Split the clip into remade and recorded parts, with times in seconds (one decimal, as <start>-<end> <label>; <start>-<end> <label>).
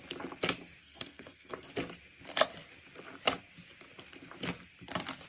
0.0-0.8 recorded; 0.8-1.7 remade; 1.7-5.3 recorded